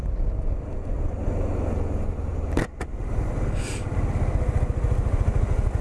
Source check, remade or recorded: recorded